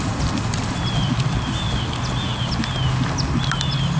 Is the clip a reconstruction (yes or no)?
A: no